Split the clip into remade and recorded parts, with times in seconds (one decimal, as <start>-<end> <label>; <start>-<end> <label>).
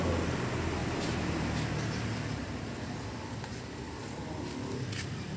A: 0.0-5.4 recorded